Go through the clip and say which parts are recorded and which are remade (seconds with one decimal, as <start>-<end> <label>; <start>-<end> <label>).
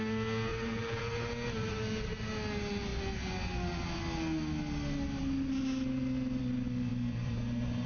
0.0-0.5 recorded; 0.5-1.0 remade; 1.0-6.9 recorded; 6.9-7.9 remade